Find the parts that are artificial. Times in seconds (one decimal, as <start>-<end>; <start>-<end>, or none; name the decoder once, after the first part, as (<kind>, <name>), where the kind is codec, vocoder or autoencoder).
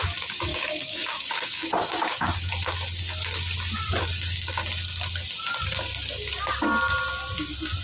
0.5-2.5 (codec, DAC)